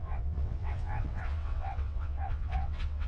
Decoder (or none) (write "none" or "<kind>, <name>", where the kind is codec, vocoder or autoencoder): vocoder, WaveNeXt